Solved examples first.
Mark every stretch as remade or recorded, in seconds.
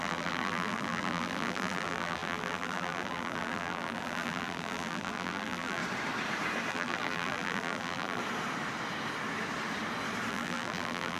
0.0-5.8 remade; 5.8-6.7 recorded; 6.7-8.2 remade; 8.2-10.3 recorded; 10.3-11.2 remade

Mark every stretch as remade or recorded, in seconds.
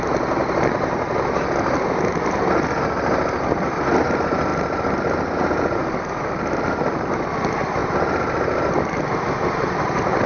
0.0-10.3 recorded